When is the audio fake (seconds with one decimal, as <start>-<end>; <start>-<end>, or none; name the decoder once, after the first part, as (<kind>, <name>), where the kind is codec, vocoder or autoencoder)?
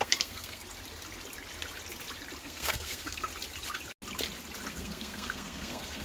0.0-0.6 (codec, SNAC); 2.4-3.3; 4.7-6.0